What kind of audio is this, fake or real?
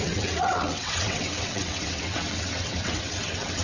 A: fake